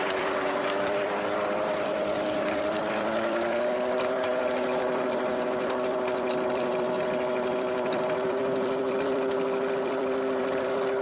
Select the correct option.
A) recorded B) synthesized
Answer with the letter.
B